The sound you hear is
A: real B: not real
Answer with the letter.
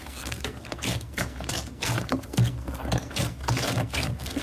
B